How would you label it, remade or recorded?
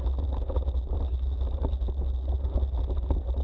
recorded